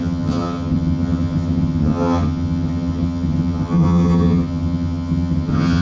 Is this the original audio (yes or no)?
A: no